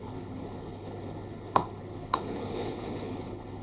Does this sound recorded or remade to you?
remade